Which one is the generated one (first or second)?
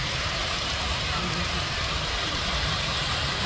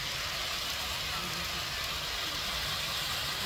first